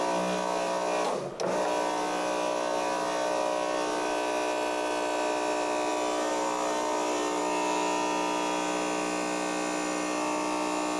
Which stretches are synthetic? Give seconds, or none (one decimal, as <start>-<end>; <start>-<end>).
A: none